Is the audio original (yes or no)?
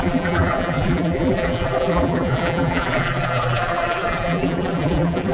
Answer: no